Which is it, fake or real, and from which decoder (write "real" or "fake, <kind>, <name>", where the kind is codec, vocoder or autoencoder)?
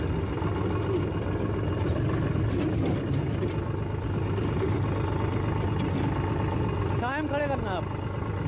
real